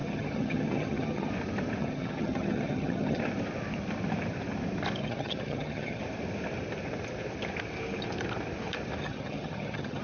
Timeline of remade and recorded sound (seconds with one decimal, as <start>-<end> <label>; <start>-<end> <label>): 0.0-1.3 remade; 1.3-1.8 recorded; 1.8-3.2 remade; 3.2-5.0 recorded; 5.0-6.0 remade; 6.0-9.0 recorded; 9.0-10.0 remade